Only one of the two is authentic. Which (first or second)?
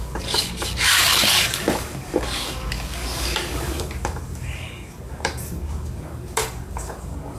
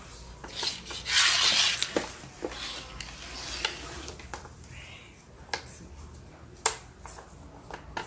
second